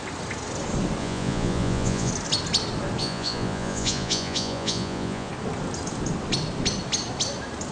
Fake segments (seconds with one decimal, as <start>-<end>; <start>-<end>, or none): 1.0-2.1; 3.0-5.3